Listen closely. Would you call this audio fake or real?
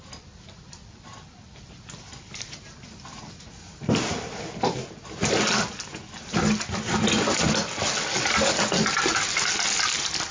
real